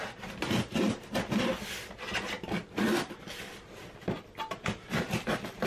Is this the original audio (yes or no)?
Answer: yes